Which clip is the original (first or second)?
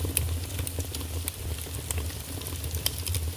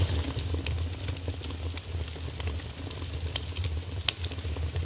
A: second